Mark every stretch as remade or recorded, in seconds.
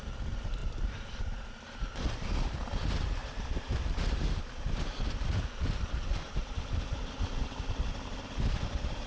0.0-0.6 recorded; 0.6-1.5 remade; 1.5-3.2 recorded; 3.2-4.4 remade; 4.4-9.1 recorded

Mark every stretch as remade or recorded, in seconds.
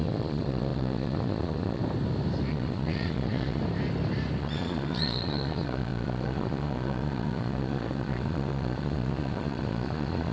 0.0-1.8 remade; 1.8-2.5 recorded; 2.5-3.6 remade; 3.6-4.4 recorded; 4.4-10.3 remade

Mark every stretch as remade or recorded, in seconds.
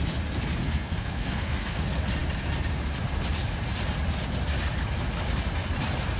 0.0-0.6 recorded; 0.6-1.8 remade; 1.8-6.2 recorded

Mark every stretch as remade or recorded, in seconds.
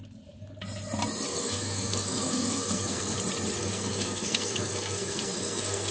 0.0-1.3 recorded; 1.3-3.2 remade; 3.2-3.6 recorded; 3.6-5.9 remade